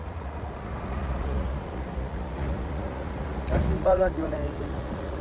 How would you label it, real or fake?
fake